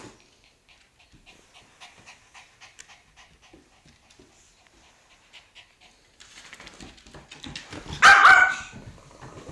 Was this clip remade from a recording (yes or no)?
no